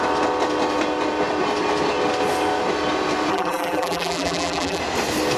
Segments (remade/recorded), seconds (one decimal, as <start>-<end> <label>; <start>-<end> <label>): 0.0-3.3 recorded; 3.3-4.8 remade; 4.8-5.4 recorded